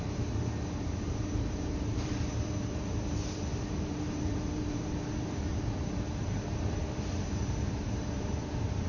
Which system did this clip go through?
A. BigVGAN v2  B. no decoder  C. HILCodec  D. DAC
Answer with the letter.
A